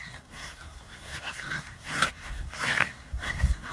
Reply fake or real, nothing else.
fake